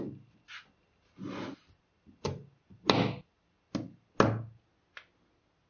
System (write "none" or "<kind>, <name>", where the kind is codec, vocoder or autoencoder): none